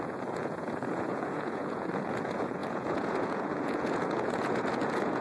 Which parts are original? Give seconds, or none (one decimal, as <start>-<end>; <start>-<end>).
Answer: none